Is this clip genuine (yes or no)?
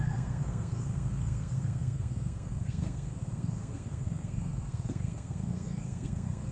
no